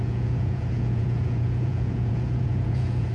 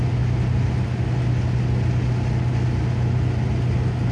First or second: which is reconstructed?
first